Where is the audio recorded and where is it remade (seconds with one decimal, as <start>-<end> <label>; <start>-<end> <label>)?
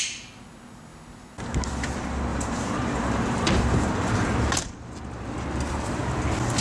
0.0-2.3 recorded; 2.3-5.4 remade; 5.4-6.6 recorded